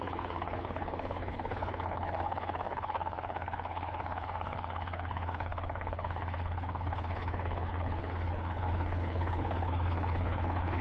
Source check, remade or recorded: remade